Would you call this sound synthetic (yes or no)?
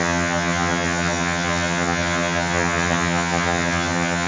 yes